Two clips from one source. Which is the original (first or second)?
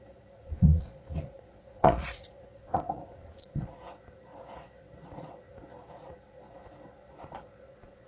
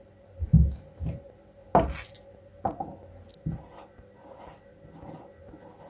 second